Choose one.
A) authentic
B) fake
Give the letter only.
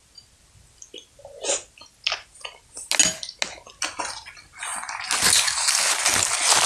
A